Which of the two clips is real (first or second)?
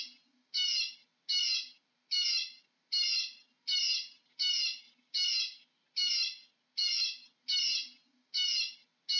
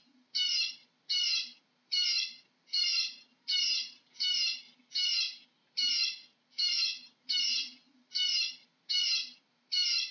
first